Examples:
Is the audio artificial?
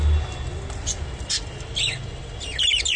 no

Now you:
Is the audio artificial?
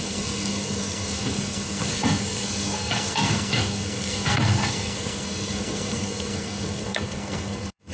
yes